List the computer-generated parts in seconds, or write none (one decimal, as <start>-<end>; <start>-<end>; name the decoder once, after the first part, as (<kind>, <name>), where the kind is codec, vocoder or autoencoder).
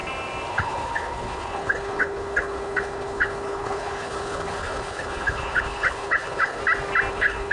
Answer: 0.5-6.6 (codec, HILCodec); 7.1-7.5